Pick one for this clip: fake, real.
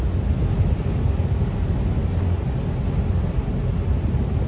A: real